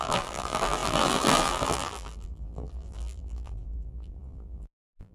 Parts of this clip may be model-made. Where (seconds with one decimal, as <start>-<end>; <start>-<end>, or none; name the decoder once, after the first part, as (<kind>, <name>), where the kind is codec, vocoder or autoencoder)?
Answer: 0.0-5.1 (vocoder, BigVGAN v2)